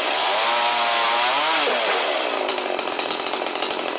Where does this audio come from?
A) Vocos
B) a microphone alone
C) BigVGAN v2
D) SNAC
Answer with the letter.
B